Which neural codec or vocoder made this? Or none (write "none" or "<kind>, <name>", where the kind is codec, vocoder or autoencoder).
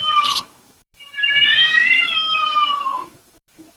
autoencoder, DAC-VAE